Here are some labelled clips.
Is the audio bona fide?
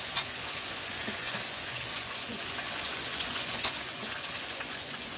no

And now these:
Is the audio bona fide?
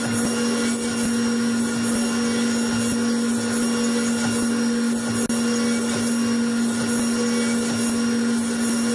yes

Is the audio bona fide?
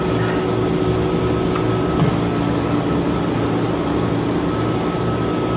yes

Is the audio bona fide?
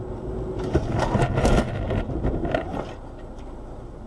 yes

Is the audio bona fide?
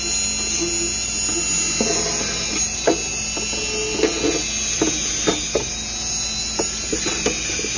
yes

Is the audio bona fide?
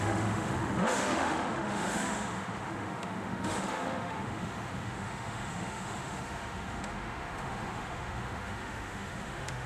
no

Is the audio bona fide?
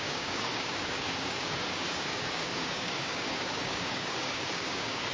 no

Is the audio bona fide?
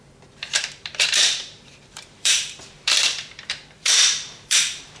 no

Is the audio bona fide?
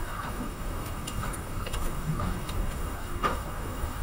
no